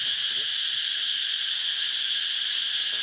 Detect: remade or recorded recorded